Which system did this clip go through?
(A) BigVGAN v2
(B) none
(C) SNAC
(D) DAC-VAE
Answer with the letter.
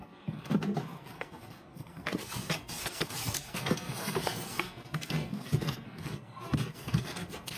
C